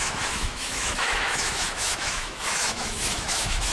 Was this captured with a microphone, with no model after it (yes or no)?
no